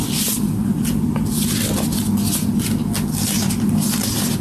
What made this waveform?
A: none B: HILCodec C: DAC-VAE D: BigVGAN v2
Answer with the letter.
A